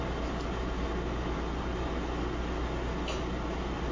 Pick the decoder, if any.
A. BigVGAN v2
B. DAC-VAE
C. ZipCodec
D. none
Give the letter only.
D